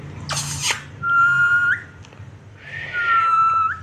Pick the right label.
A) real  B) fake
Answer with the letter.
A